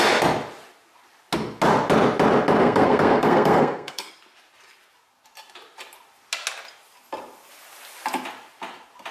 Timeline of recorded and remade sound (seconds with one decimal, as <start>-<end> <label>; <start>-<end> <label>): 0.0-2.6 recorded; 2.6-4.1 remade; 4.1-9.1 recorded